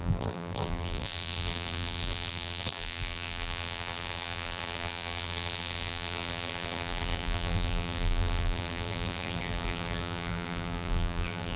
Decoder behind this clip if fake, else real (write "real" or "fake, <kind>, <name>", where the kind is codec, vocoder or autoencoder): fake, vocoder, BigVGAN v2